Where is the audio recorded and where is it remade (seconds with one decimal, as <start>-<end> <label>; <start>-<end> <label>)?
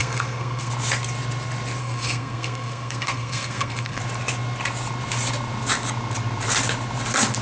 0.0-0.7 remade; 0.7-1.8 recorded; 1.8-4.0 remade; 4.0-7.4 recorded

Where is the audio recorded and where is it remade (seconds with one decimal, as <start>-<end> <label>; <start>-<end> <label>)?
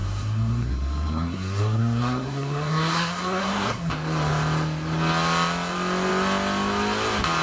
0.0-3.9 remade; 3.9-7.4 recorded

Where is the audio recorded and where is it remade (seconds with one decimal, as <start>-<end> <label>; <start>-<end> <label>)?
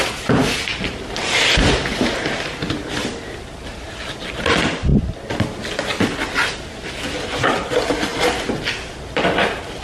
0.0-9.8 recorded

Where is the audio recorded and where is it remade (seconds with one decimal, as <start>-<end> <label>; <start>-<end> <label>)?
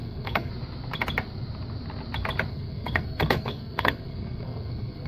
0.0-0.5 remade; 0.5-2.5 recorded; 2.5-5.1 remade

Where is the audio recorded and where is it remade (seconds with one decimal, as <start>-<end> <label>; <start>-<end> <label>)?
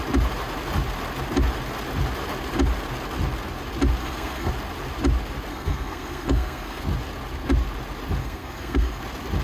0.0-4.0 recorded; 4.0-4.5 remade; 4.5-5.5 recorded; 5.5-6.8 remade; 6.8-8.2 recorded; 8.2-9.0 remade; 9.0-9.4 recorded